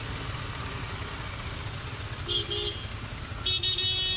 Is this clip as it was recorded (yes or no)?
yes